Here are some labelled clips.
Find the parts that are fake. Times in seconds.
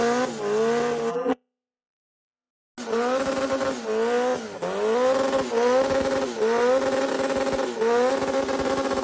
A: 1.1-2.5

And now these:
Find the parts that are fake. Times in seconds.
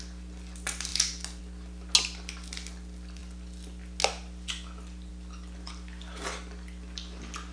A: none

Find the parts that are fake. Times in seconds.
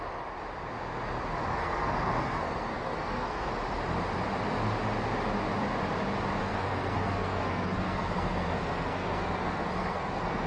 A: 1.5-3.5; 6.4-10.5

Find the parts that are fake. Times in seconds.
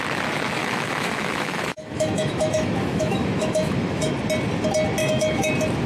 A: 0.6-4.1; 5.0-5.5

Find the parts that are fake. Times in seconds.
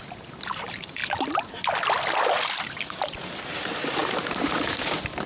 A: 0.0-1.0; 3.1-5.3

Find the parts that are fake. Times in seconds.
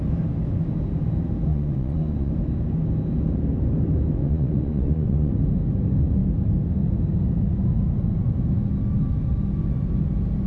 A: 1.5-2.3; 4.2-5.3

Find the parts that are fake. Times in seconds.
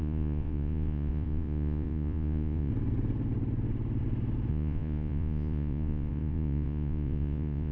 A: 0.0-2.7; 4.5-7.7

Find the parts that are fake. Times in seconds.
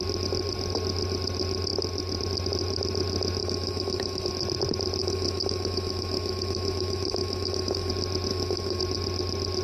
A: 3.4-4.3; 5.0-7.9; 8.3-8.8